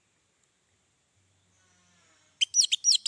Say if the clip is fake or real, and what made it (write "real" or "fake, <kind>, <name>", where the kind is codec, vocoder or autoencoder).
real